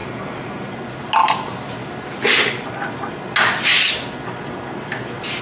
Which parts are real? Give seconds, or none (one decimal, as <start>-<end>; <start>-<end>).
0.0-5.4